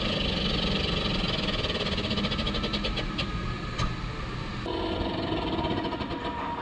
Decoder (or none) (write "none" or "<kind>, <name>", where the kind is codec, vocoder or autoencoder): none